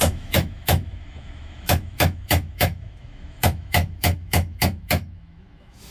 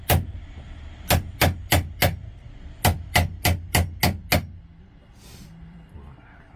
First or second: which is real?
second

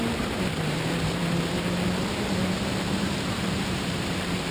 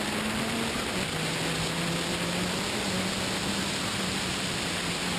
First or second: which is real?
second